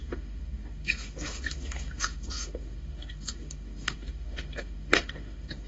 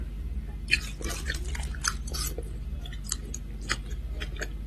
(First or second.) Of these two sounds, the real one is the second